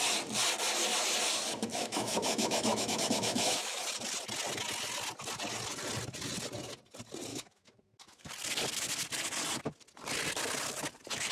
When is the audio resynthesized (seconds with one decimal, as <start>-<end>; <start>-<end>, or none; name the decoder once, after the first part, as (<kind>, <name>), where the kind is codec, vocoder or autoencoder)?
1.7-3.8 (autoencoder, DAC-VAE); 7.3-8.3

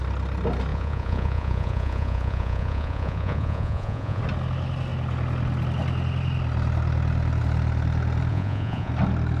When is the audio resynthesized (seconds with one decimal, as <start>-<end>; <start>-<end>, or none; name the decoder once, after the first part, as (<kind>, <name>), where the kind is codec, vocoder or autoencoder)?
0.7-4.2 (vocoder, Vocos); 8.3-8.9

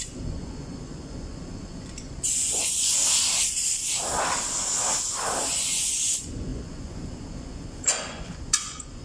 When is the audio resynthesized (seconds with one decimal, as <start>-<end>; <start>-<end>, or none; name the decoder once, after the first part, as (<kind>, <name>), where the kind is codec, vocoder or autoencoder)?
0.0-3.0 (vocoder, Vocos); 5.5-9.0

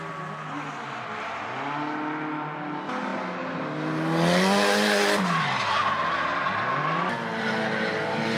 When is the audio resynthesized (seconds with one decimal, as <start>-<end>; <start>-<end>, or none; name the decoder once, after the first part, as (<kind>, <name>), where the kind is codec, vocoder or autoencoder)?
none

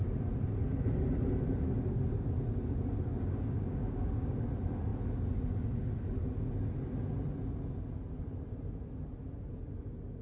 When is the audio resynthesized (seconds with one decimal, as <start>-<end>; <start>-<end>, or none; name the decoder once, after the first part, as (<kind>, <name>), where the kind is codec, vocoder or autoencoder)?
3.1-4.4 (codec, DAC)

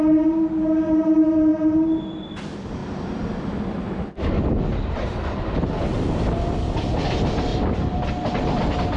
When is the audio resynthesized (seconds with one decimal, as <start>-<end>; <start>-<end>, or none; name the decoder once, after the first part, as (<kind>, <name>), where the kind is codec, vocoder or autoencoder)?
2.8-3.6 (vocoder, BigVGAN v2); 7.5-8.1

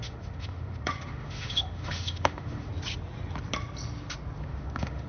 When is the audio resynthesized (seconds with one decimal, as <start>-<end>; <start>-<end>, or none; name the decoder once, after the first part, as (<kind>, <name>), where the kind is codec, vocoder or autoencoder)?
0.0-2.7 (autoencoder, DAC-VAE); 4.4-5.1

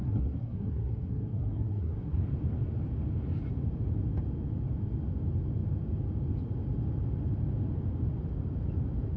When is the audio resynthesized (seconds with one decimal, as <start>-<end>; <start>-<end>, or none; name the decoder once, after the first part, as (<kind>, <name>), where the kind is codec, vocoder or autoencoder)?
0.0-2.2 (codec, SNAC)